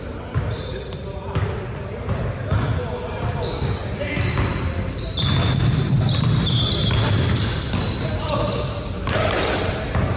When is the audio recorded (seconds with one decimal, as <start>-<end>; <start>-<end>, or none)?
0.0-10.2